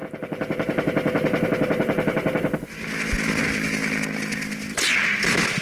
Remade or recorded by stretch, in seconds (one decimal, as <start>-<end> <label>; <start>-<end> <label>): 0.0-5.6 recorded